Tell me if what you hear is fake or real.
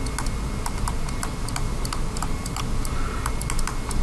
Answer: real